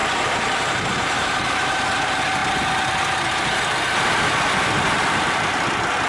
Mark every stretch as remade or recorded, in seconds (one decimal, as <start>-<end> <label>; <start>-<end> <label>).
0.0-1.8 remade; 1.8-6.1 recorded